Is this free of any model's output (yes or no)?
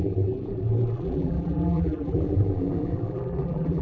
no